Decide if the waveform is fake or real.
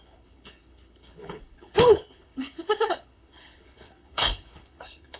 fake